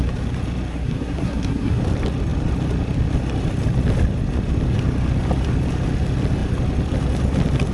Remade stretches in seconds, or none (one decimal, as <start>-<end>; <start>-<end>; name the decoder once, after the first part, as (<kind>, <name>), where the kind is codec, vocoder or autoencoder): 0.7-1.8 (codec, SNAC)